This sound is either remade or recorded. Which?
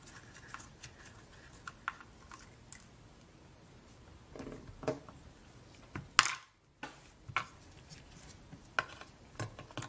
recorded